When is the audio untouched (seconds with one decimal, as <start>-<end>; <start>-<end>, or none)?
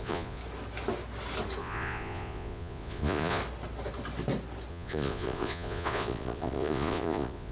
0.4-1.6; 3.4-4.7